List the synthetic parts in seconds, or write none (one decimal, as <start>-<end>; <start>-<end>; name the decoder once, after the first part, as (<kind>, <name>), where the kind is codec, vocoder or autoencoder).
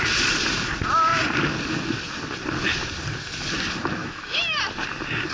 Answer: 4.0-4.6 (autoencoder, DAC-VAE)